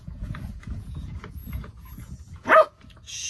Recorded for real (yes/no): no